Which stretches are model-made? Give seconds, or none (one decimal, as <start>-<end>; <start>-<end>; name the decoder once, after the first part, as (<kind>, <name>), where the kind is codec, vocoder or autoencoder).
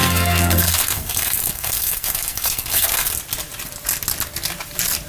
0.0-3.1 (codec, SNAC)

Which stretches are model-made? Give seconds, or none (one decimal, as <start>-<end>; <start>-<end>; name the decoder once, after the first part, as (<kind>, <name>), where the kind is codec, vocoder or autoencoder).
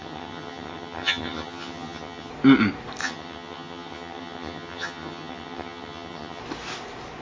0.0-2.3 (vocoder, HiFi-GAN); 3.0-6.4